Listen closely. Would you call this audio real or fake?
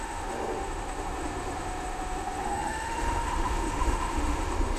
fake